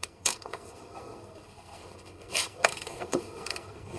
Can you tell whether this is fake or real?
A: fake